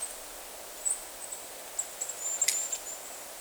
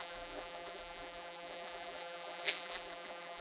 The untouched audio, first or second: first